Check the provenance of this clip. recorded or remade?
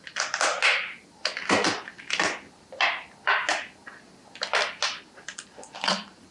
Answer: recorded